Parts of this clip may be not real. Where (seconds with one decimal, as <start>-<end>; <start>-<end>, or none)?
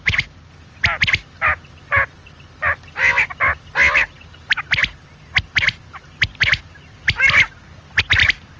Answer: none